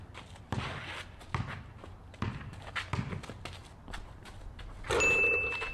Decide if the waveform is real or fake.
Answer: real